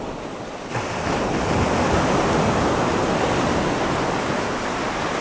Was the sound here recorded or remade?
recorded